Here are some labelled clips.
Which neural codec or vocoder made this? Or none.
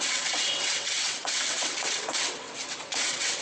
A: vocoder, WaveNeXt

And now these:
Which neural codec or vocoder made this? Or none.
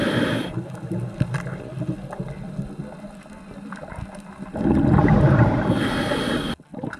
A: none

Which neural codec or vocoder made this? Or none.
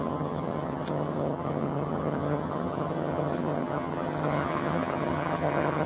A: vocoder, HiFi-GAN